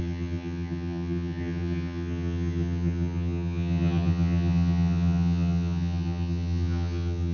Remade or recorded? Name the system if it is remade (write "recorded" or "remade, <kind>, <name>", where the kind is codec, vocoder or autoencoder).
remade, vocoder, HiFi-GAN